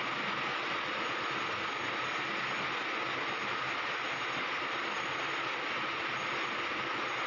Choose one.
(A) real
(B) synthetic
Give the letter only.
A